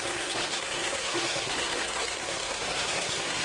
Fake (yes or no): yes